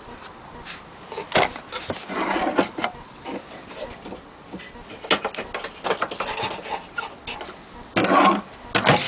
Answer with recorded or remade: recorded